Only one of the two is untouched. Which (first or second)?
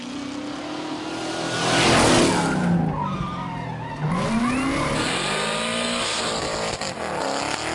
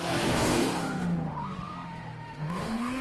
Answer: first